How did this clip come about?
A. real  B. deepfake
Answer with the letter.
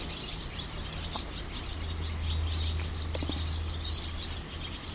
A